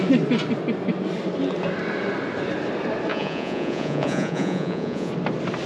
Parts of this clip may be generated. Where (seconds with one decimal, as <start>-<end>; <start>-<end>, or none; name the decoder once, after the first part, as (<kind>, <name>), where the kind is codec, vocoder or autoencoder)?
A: 3.1-5.1 (vocoder, Vocos)